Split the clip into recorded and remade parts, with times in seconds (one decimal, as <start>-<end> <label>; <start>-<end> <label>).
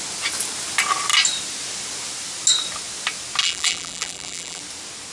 0.0-3.4 recorded; 3.4-4.6 remade; 4.6-5.1 recorded